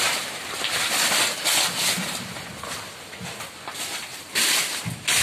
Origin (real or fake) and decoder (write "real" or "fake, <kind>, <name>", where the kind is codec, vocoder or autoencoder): fake, vocoder, BigVGAN v2